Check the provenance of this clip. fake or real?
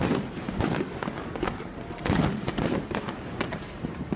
real